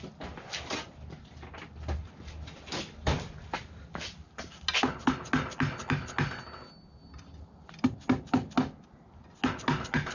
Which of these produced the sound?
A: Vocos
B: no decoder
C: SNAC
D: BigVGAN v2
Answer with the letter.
B